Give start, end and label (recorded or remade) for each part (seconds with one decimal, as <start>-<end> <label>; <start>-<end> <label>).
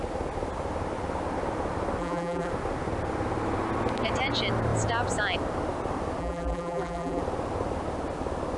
0.0-2.0 recorded; 2.0-2.5 remade; 2.5-6.2 recorded; 6.2-7.2 remade; 7.2-8.6 recorded